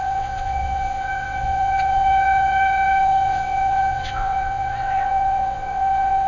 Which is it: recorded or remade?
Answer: remade